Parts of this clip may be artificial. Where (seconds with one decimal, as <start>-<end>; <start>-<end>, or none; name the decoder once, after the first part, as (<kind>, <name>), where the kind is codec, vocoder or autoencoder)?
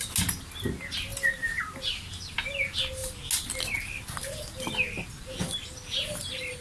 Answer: 1.1-1.6 (vocoder, BigVGAN v2)